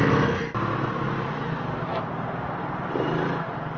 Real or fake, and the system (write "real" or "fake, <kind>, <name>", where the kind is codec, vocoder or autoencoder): real